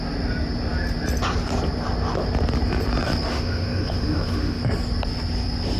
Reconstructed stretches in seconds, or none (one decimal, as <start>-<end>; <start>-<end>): 3.3-4.6